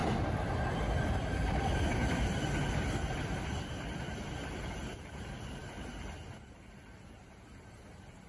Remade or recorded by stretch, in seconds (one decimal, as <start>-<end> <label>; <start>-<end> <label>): 0.0-8.3 recorded